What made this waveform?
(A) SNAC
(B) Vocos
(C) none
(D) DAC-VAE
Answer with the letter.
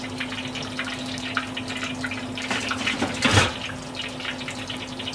C